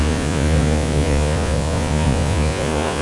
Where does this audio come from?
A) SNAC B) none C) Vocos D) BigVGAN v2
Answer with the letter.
C